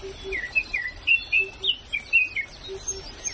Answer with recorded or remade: recorded